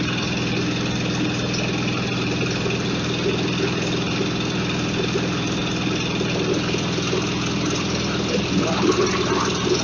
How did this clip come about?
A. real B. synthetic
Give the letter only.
A